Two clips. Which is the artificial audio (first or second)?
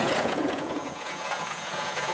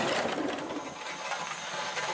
first